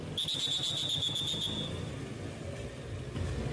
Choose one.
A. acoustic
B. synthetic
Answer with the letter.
A